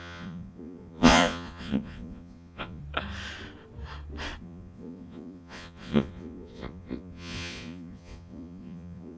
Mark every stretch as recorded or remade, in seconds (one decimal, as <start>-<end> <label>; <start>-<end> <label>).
0.0-2.8 remade; 2.8-4.4 recorded; 4.4-9.2 remade